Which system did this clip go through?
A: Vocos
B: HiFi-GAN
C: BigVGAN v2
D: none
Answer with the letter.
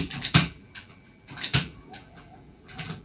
C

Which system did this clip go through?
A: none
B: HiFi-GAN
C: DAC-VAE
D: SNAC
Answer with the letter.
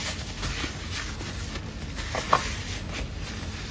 A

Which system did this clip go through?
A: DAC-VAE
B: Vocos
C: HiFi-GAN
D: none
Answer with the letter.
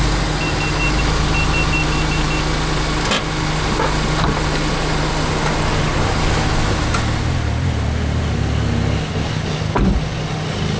D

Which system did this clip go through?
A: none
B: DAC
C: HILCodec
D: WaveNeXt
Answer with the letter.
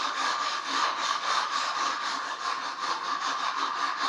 B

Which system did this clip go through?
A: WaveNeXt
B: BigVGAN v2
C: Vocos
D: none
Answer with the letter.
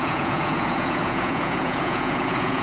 C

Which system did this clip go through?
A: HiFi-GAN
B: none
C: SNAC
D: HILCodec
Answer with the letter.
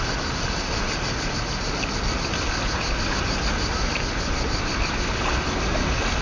B